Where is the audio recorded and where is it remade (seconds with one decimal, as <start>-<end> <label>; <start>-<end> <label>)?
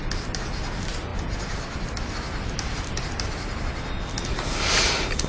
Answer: 0.0-5.3 recorded